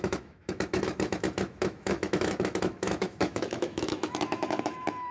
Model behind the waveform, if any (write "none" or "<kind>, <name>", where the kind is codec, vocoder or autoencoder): autoencoder, DAC-VAE